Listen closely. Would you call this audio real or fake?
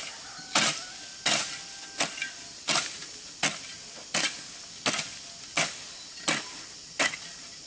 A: real